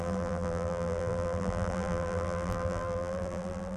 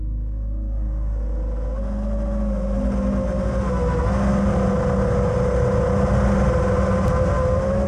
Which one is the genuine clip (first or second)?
second